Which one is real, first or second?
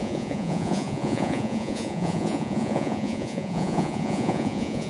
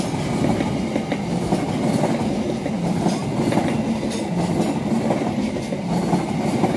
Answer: second